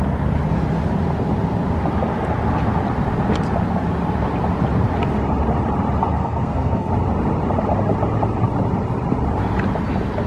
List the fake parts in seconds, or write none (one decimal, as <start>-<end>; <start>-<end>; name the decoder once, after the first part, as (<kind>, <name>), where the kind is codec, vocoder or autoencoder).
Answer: 6.1-6.9 (codec, SNAC)